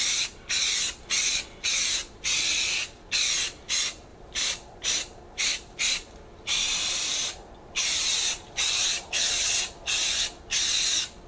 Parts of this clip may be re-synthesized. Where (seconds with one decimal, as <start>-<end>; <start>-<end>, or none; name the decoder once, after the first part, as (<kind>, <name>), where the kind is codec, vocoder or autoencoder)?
4.1-9.1 (vocoder, BigVGAN v2)